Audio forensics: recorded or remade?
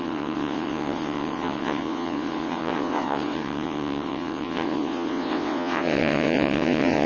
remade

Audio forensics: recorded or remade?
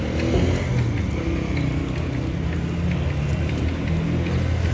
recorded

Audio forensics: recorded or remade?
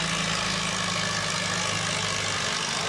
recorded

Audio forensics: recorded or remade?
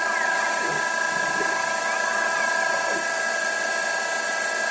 recorded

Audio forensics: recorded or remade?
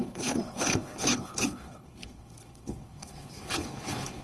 remade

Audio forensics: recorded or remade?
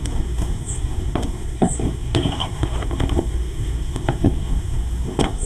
remade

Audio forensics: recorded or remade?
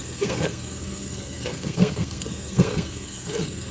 remade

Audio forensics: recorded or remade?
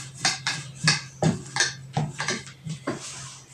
recorded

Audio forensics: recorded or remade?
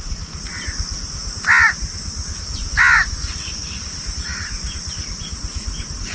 recorded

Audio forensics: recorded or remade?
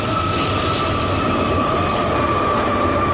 recorded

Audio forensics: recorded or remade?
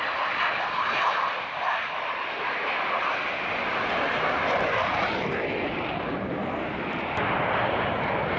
recorded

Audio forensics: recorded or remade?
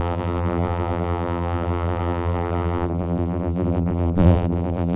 remade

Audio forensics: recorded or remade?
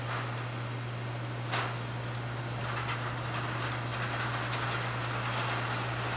recorded